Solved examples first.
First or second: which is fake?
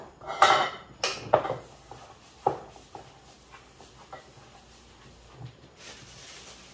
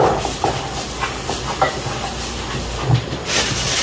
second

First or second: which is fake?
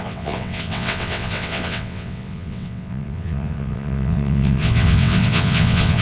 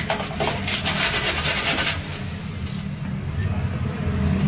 first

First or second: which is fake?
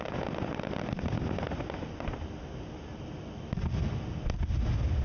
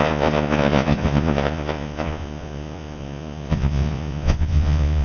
second